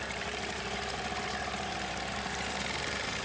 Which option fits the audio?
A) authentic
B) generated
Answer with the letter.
B